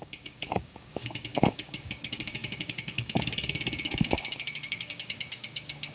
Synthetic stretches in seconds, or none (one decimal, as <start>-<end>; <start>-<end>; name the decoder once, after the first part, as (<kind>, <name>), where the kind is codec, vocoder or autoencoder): 0.0-5.9 (codec, DAC)